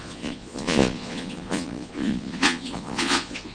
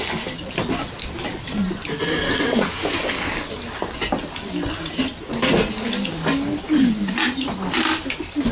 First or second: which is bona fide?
second